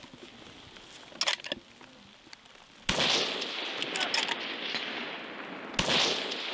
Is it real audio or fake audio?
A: real